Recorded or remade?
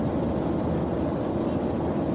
recorded